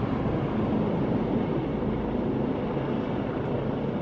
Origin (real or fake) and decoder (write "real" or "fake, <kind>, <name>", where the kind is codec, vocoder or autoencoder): real